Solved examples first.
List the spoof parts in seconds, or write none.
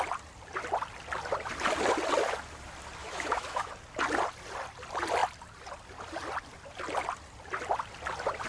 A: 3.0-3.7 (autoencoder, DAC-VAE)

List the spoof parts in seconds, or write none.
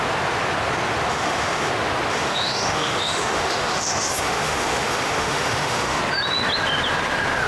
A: 1.1-1.7 (autoencoder, DAC-VAE); 2.1-6.0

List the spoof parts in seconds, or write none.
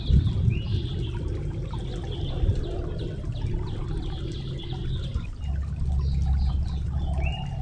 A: none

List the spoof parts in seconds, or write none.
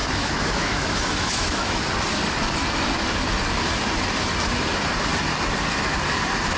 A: 0.0-1.8 (autoencoder, DAC-VAE)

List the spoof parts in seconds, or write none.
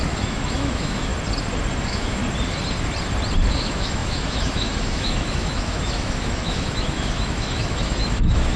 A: 0.0-1.1 (autoencoder, DAC-VAE); 1.8-2.2; 3.5-8.6